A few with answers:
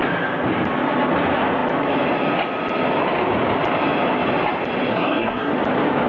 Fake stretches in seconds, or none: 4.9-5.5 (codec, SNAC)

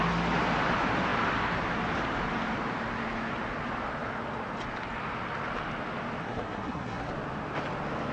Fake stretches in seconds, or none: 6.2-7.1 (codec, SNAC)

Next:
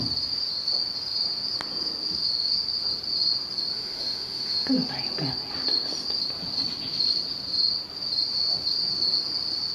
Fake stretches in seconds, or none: 3.7-4.7 (autoencoder, DAC-VAE)

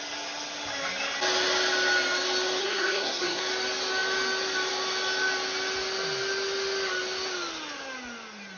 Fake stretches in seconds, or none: 2.6-3.4 (codec, SNAC)

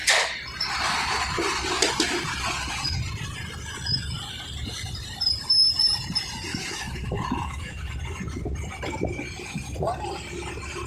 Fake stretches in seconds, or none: 6.5-7.9 (autoencoder, DAC-VAE)